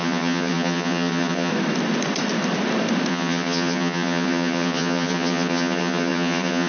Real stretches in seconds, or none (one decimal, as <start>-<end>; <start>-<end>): 1.5-3.1